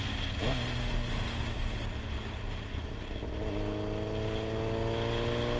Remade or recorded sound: recorded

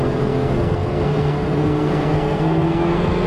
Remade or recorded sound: remade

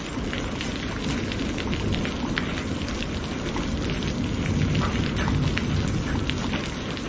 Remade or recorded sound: recorded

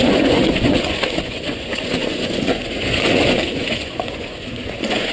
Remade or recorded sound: remade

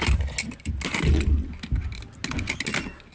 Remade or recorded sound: recorded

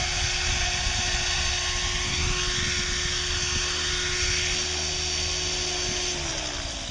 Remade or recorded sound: recorded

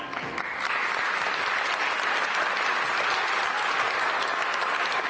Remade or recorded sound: recorded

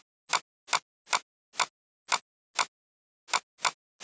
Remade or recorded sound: recorded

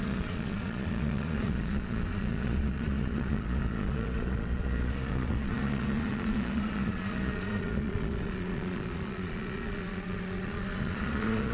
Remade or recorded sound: remade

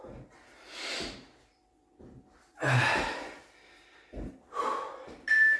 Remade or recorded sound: recorded